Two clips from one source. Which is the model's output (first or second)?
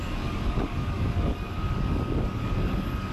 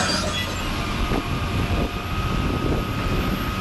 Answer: first